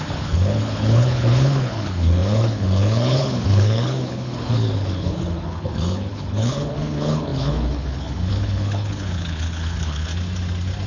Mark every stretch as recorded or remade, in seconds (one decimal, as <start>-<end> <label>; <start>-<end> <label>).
0.0-10.1 remade; 10.1-10.9 recorded